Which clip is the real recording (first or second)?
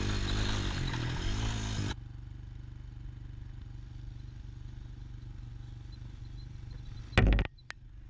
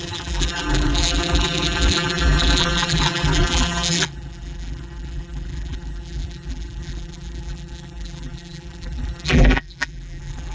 first